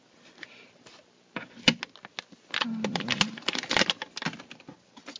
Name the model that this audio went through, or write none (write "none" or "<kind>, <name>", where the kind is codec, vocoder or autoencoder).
none